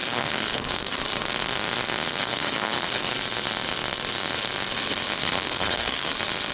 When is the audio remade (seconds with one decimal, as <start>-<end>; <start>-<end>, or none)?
0.0-1.0; 2.2-3.1; 5.2-6.1